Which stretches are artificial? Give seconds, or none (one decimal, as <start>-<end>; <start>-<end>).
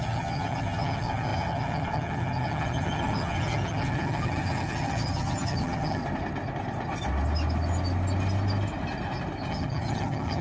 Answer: 0.0-6.0; 9.5-10.4